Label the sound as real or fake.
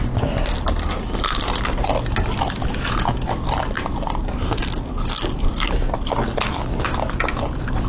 real